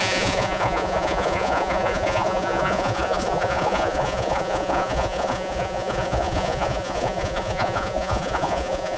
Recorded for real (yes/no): no